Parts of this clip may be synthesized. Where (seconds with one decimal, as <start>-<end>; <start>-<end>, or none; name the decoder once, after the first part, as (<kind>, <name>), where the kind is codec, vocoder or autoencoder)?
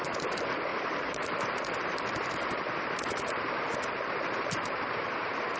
0.0-5.6 (vocoder, BigVGAN v2)